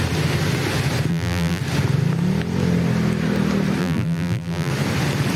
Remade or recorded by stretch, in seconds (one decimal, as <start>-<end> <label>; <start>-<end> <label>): 0.0-1.1 recorded; 1.1-1.6 remade; 1.6-3.8 recorded; 3.8-4.7 remade; 4.7-5.4 recorded